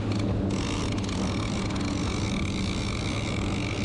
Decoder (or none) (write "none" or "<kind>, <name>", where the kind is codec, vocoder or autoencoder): none